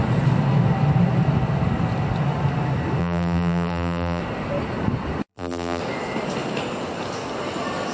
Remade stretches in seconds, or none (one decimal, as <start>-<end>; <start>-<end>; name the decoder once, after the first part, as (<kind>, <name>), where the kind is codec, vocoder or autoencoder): 3.0-4.2 (vocoder, BigVGAN v2); 5.3-5.8